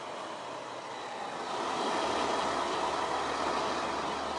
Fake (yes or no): no